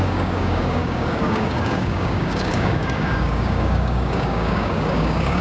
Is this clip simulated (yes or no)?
yes